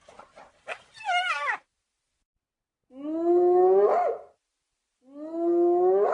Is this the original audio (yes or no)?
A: yes